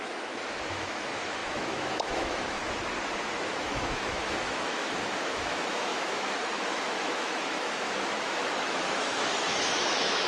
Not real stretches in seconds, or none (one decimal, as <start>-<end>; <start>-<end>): 0.0-2.6; 3.4-10.3